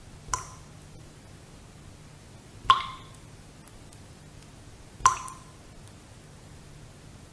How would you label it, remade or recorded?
recorded